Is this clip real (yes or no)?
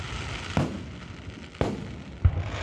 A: yes